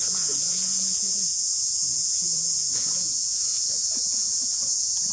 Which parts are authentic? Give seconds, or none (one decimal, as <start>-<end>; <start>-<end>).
none